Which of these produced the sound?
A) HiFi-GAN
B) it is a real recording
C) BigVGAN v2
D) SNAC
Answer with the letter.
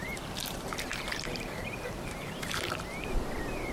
C